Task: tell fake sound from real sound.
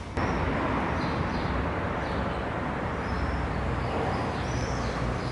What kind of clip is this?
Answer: real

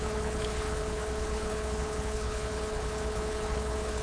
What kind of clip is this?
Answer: fake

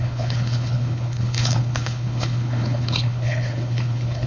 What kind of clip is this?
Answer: fake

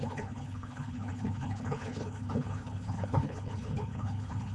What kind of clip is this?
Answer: fake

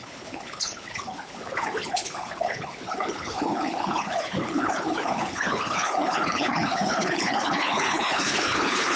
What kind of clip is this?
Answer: fake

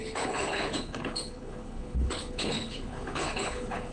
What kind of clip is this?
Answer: fake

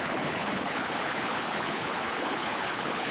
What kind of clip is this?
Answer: fake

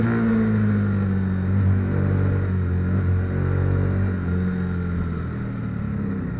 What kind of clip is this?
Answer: real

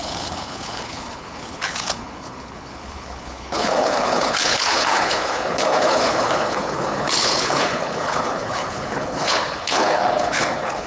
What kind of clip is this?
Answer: fake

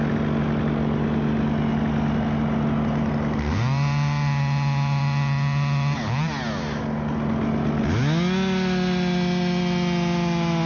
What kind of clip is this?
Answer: real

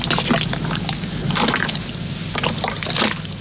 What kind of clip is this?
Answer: real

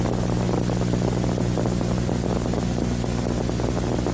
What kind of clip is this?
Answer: real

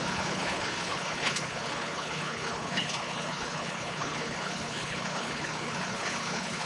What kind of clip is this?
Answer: fake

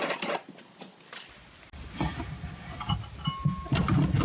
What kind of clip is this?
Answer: real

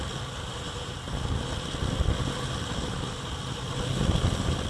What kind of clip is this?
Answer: real